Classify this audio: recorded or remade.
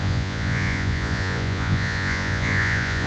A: remade